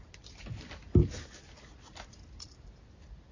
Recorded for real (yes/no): yes